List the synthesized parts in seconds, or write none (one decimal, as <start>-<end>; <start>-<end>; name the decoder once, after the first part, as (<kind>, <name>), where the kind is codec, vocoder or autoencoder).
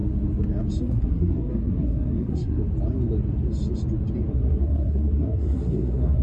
0.8-2.6 (codec, SNAC); 4.3-6.2